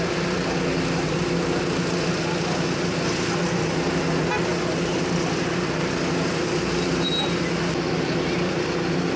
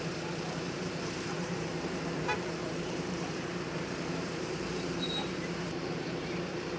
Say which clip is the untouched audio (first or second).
first